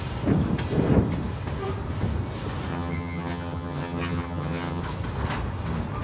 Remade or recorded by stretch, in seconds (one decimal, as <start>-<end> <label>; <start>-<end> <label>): 0.0-2.7 recorded; 2.7-4.8 remade; 4.8-6.0 recorded

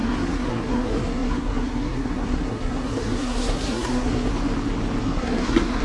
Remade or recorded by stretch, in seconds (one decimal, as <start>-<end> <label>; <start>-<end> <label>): 0.0-4.3 remade; 4.3-5.0 recorded; 5.0-5.8 remade

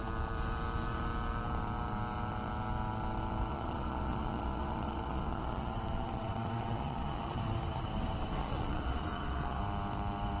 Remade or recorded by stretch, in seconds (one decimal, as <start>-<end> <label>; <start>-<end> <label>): 0.0-3.5 recorded; 3.5-7.4 remade; 7.4-8.4 recorded; 8.4-9.6 remade; 9.6-10.4 recorded